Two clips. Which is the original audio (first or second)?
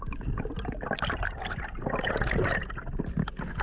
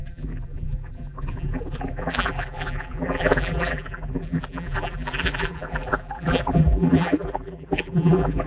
first